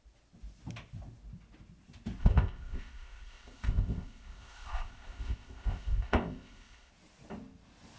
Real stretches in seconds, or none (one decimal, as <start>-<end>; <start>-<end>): 0.0-2.2; 6.9-8.0